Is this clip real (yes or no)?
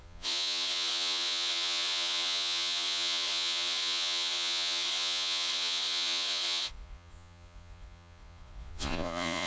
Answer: no